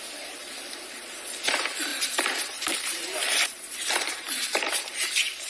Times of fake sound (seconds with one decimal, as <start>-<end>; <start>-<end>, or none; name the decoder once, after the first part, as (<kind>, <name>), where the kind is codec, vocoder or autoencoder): 0.4-1.2 (vocoder, BigVGAN v2); 1.9-5.5